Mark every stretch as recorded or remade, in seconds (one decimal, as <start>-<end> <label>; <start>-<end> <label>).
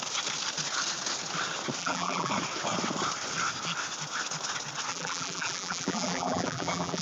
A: 0.0-1.8 recorded; 1.8-2.3 remade; 2.3-4.9 recorded; 4.9-7.0 remade